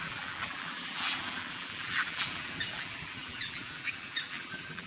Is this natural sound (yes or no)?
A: no